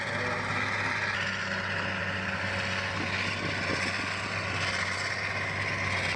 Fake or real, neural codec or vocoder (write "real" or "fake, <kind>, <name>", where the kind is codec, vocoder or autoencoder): real